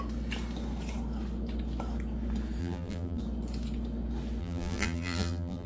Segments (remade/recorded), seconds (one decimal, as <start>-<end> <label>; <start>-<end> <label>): 0.0-2.6 recorded; 2.6-3.2 remade; 3.2-4.4 recorded; 4.4-5.7 remade